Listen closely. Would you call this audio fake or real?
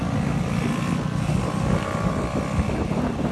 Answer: real